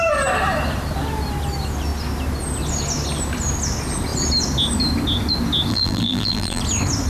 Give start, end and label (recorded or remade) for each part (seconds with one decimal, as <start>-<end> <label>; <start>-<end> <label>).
0.0-5.7 recorded; 5.7-6.6 remade; 6.6-7.1 recorded